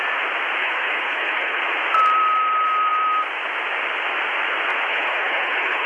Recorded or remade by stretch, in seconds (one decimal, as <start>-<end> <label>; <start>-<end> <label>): 0.0-0.6 recorded; 0.6-1.6 remade; 1.6-4.9 recorded; 4.9-5.9 remade